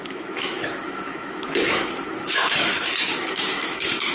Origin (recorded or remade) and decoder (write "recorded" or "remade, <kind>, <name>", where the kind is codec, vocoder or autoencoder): remade, autoencoder, DAC-VAE